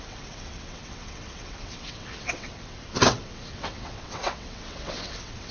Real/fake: fake